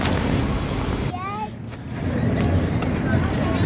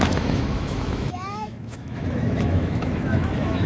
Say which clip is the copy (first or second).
second